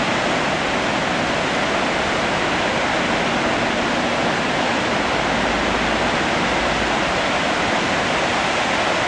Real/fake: real